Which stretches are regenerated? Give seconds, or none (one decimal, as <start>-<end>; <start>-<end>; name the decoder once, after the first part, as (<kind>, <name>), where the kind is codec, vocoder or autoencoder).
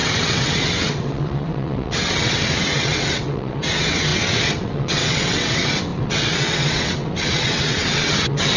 0.0-8.6 (vocoder, WaveNeXt)